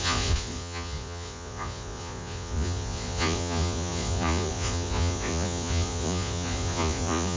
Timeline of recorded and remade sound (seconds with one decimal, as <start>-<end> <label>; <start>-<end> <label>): 0.0-7.4 remade